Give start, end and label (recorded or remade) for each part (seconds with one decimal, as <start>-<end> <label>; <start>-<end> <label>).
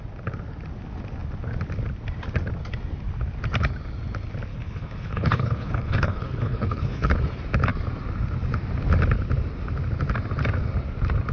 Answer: 0.0-4.5 recorded; 4.5-7.1 remade; 7.1-11.3 recorded